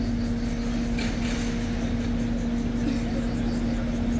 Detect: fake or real real